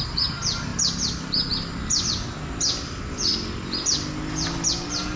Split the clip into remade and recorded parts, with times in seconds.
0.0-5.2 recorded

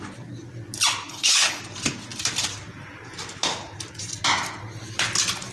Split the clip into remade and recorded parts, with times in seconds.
0.0-1.1 recorded; 1.1-1.6 remade; 1.6-5.5 recorded

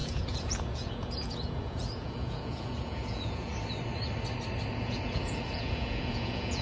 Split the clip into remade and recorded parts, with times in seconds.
0.0-3.5 remade; 3.5-4.7 recorded; 4.7-6.6 remade

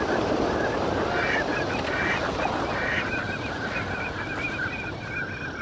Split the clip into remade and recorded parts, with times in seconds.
0.0-5.6 recorded